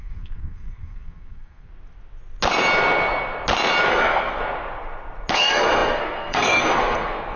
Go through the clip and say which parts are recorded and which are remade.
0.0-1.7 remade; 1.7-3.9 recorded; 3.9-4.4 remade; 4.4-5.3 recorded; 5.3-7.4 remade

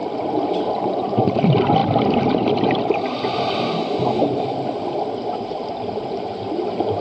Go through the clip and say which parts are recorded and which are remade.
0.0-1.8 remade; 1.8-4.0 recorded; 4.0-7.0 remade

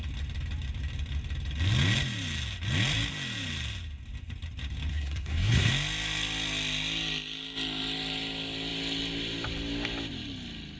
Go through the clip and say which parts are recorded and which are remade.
0.0-4.9 recorded; 4.9-5.7 remade; 5.7-10.8 recorded

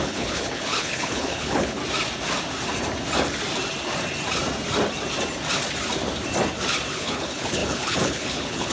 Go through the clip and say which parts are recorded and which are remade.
0.0-1.8 remade; 1.8-6.9 recorded; 6.9-8.7 remade

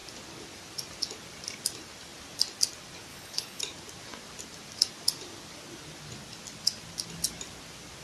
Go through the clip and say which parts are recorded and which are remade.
0.0-3.1 recorded; 3.1-3.6 remade; 3.6-8.0 recorded